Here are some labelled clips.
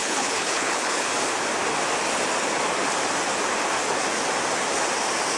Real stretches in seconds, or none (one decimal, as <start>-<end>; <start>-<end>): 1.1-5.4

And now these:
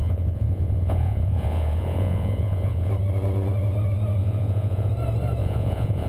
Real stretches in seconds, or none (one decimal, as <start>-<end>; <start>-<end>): 2.9-4.2; 4.9-5.4

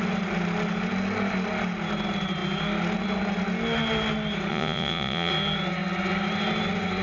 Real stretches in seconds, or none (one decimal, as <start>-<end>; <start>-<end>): 0.0-4.5; 5.3-7.0

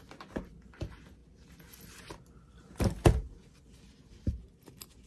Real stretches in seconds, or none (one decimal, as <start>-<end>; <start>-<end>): 0.0-5.1